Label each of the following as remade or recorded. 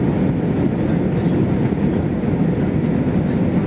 recorded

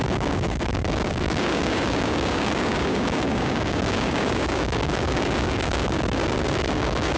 remade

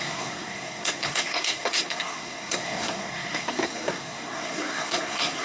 remade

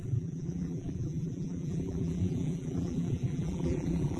remade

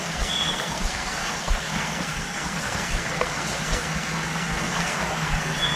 remade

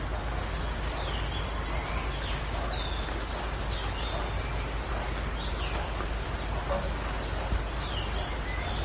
recorded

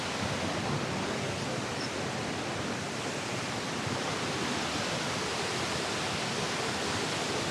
recorded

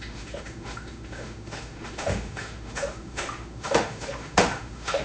remade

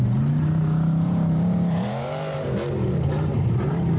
remade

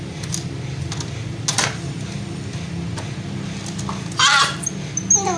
recorded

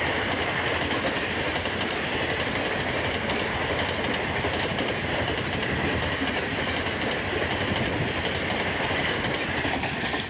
recorded